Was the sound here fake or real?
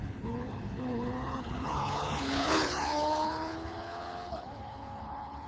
fake